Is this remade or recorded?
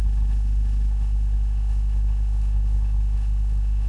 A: remade